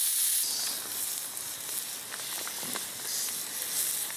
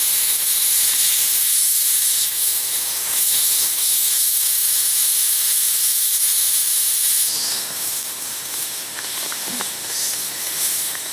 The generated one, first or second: second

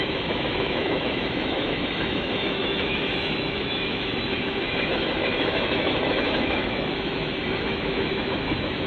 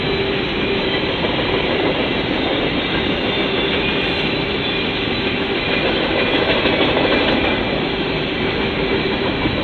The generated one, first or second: first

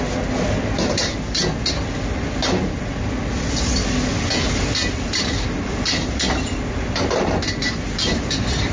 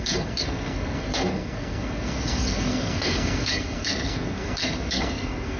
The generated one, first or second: second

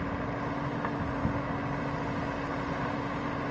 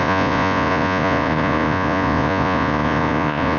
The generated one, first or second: second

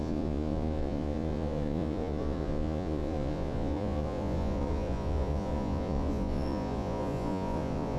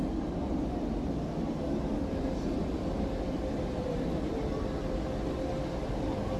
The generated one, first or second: first